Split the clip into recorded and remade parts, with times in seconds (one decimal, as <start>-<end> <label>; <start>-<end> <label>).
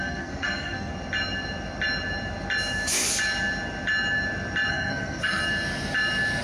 0.0-0.9 remade; 0.9-4.7 recorded; 4.7-5.4 remade; 5.4-6.4 recorded